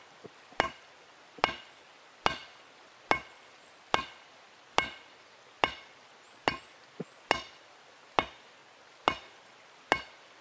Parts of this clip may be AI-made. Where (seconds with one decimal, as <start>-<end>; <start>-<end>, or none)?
none